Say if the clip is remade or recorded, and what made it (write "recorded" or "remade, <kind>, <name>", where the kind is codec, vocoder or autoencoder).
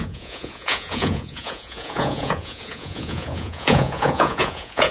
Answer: remade, vocoder, Vocos